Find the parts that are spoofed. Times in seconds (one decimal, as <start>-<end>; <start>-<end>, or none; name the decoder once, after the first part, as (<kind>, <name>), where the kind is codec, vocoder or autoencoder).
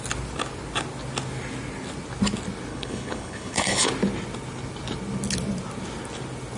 2.7-3.9 (codec, HILCodec)